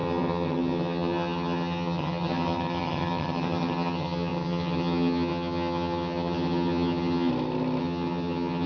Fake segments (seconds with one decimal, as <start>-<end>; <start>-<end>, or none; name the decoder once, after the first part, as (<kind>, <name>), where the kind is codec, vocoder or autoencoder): 0.0-7.3 (vocoder, HiFi-GAN); 7.8-8.7